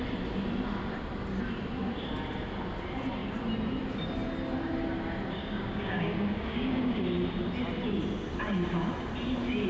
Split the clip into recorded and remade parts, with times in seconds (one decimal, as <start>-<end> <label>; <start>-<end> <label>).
0.0-5.4 recorded; 5.4-7.0 remade; 7.0-9.7 recorded